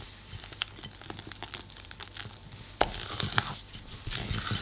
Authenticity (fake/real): real